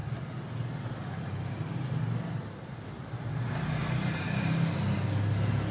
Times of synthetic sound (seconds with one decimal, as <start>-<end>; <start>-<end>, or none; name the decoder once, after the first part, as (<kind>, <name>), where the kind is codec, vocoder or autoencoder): none